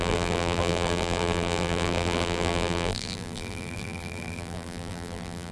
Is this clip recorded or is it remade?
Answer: remade